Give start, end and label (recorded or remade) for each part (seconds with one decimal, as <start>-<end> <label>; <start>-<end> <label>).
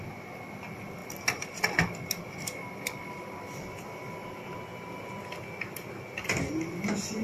0.0-7.2 recorded